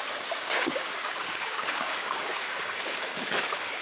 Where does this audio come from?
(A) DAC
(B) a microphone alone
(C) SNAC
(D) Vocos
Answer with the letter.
A